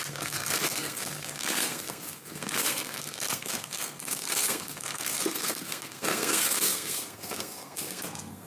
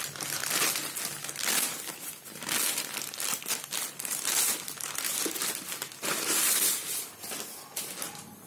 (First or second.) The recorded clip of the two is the second